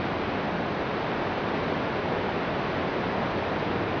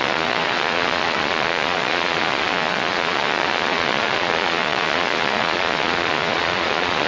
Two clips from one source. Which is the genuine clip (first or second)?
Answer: first